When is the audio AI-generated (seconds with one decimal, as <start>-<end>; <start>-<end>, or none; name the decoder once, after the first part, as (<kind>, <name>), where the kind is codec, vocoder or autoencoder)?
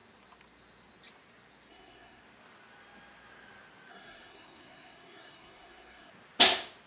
1.7-2.2 (codec, SNAC); 3.9-6.1